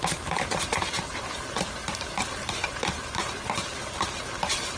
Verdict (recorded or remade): remade